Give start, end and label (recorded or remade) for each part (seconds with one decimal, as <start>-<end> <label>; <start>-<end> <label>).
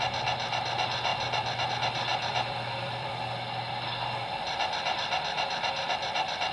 0.0-1.1 recorded; 1.1-1.7 remade; 1.7-2.1 recorded; 2.1-3.1 remade; 3.1-6.5 recorded